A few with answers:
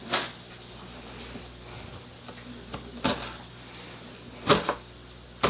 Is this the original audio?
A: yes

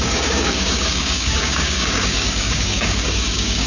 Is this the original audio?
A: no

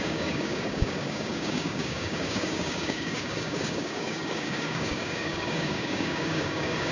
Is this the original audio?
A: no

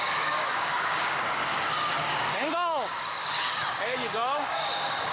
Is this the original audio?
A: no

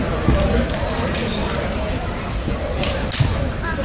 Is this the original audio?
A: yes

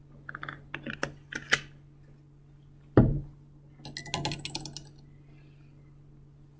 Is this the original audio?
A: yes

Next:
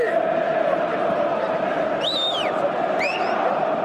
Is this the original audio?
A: yes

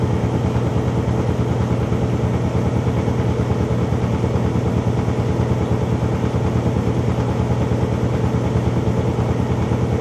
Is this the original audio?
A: yes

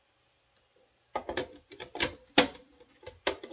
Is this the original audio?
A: yes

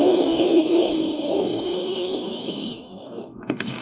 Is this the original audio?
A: no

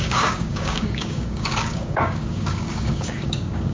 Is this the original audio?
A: no